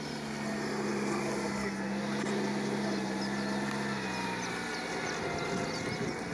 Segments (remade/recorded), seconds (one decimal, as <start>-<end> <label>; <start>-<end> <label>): 0.0-6.3 recorded